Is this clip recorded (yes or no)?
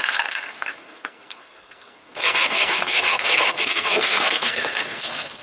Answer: no